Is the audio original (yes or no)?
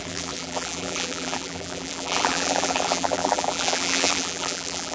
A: no